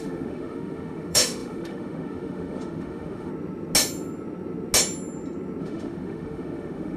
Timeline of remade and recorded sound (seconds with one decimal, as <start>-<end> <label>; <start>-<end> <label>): 0.0-3.3 remade; 3.3-5.6 recorded; 5.6-7.0 remade